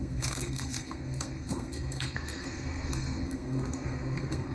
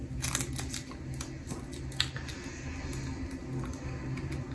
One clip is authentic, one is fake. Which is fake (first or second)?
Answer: first